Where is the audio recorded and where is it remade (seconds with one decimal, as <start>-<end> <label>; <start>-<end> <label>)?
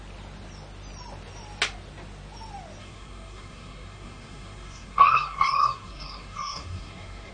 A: 0.0-2.8 recorded; 2.8-7.3 remade